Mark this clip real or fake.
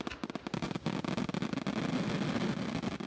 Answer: real